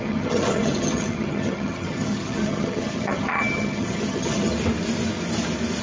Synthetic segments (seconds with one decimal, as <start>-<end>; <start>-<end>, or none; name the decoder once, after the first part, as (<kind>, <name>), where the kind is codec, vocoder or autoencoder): 0.0-4.5 (vocoder, HiFi-GAN)